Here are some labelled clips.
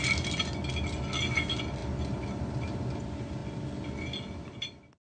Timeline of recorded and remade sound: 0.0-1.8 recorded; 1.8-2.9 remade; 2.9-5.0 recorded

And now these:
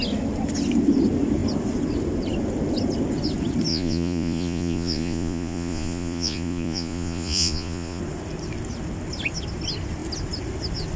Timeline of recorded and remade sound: 0.0-3.7 recorded; 3.7-8.0 remade; 8.0-11.0 recorded

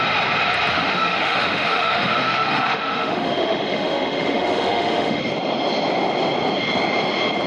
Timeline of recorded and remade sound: 0.0-0.7 recorded; 0.7-5.2 remade; 5.2-7.5 recorded

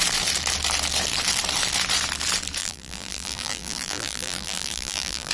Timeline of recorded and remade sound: 0.0-2.6 recorded; 2.6-5.3 remade